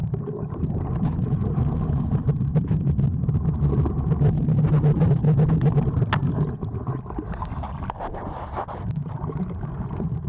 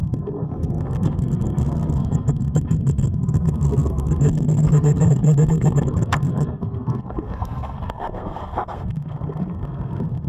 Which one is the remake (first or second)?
second